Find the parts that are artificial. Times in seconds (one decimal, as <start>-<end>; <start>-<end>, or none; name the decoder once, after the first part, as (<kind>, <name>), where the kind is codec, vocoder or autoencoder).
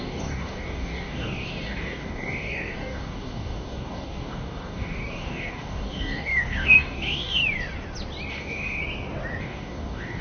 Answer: 0.0-7.4 (codec, DAC); 8.3-8.8; 9.4-10.2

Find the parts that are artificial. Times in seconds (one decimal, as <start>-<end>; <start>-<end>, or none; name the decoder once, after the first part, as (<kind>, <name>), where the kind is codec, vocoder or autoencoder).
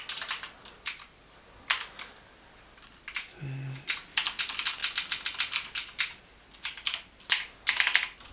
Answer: none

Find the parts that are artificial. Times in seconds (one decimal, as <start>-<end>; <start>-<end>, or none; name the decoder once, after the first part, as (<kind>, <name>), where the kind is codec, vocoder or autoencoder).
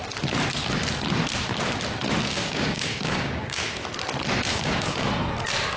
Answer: 2.2-3.6 (codec, DAC); 4.5-5.1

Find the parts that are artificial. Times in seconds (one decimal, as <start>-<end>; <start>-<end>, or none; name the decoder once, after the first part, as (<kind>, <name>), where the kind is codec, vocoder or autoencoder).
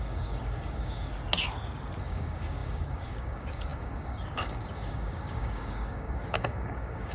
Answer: 0.0-1.1 (codec, DAC); 2.0-7.1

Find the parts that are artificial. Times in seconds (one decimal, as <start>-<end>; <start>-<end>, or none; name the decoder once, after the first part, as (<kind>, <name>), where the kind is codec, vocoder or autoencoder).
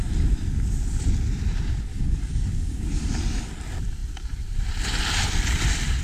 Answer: 1.9-3.2 (codec, DAC)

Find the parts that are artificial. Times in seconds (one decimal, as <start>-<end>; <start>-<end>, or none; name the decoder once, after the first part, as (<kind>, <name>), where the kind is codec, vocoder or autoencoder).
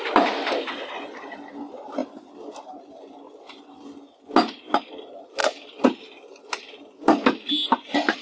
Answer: none